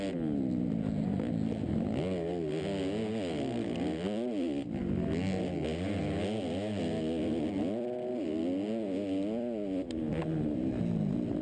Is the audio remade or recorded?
recorded